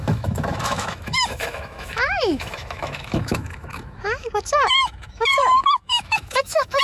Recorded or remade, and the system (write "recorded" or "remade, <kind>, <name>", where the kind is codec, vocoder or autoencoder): remade, autoencoder, DAC-VAE